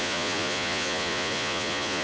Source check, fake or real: fake